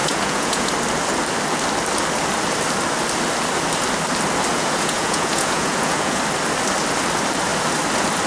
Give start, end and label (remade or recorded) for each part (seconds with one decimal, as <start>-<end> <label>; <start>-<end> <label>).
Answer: 0.0-0.7 remade; 0.7-4.5 recorded; 4.5-6.2 remade; 6.2-8.3 recorded